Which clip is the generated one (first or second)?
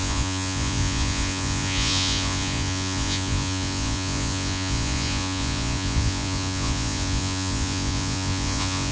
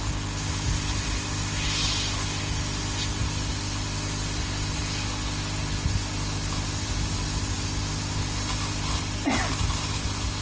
first